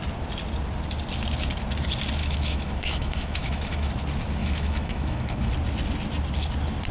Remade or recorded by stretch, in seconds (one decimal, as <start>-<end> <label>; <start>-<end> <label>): 0.0-2.2 recorded; 2.2-3.9 remade; 3.9-4.4 recorded; 4.4-5.5 remade; 5.5-6.9 recorded